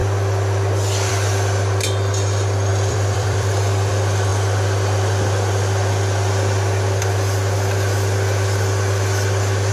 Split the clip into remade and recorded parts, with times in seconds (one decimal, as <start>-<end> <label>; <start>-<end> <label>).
0.0-2.7 recorded; 2.7-3.9 remade; 3.9-9.7 recorded